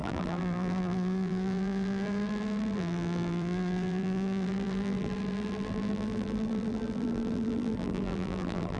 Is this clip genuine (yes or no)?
no